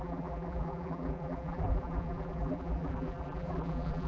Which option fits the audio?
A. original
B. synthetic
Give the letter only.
B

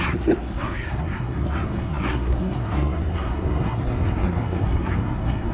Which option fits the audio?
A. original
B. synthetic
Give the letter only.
B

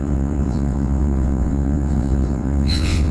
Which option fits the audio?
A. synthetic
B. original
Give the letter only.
A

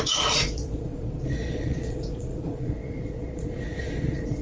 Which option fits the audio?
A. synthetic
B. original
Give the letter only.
A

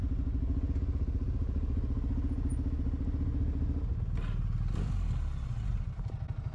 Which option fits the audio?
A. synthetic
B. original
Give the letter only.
B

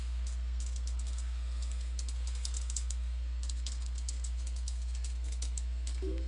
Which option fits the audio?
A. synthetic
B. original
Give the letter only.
A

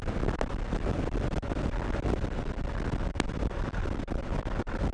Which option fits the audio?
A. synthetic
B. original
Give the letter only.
B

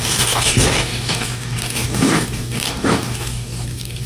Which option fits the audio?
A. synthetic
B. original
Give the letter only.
A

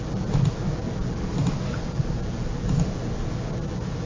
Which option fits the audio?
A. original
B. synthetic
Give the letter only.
A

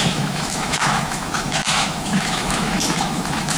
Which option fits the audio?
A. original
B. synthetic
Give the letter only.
B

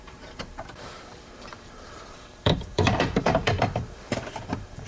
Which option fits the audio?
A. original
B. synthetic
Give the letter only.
B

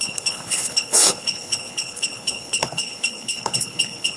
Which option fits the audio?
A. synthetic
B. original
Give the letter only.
A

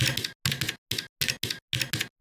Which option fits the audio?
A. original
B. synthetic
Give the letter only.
A